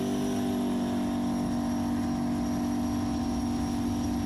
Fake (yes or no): no